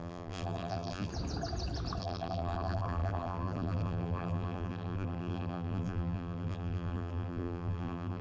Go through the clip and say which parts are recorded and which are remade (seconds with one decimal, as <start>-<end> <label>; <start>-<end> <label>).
0.0-1.1 remade; 1.1-2.0 recorded; 2.0-8.2 remade